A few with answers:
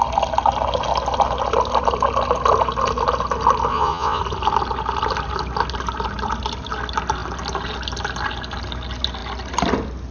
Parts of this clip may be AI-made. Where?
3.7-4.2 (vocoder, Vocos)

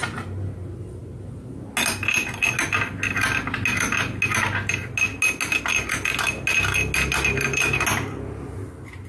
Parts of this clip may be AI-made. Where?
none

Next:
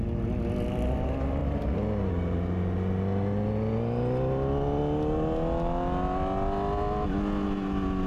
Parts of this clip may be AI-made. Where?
none